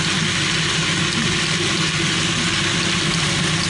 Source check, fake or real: real